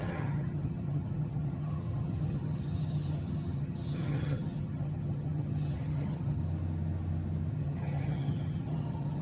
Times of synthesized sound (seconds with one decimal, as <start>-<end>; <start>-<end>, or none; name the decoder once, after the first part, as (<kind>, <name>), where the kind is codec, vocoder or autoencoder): 0.0-6.4 (vocoder, HiFi-GAN); 7.5-9.2

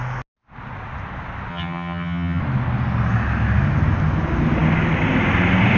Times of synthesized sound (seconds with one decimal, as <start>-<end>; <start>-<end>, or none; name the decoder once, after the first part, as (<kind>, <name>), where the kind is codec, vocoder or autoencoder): 1.5-2.4 (vocoder, HiFi-GAN)

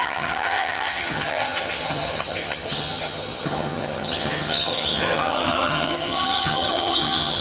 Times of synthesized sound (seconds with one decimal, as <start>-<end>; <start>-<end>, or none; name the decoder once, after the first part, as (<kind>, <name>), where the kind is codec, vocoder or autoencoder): 0.0-7.4 (vocoder, HiFi-GAN)

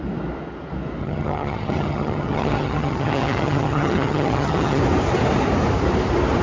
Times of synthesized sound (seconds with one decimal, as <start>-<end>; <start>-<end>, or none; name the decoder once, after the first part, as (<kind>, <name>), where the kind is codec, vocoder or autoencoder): 1.0-4.8 (vocoder, HiFi-GAN)